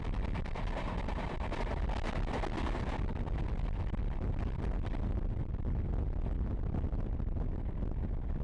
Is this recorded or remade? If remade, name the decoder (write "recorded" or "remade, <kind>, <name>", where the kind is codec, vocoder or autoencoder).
recorded